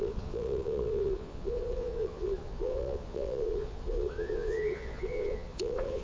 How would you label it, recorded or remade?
remade